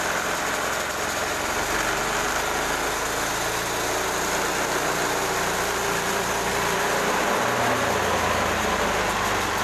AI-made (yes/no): no